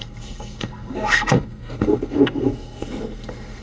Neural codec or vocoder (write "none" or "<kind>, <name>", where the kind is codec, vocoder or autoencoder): codec, SNAC